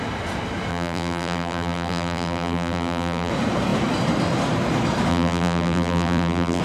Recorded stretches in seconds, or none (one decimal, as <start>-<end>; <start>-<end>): 0.0-0.7; 3.3-5.1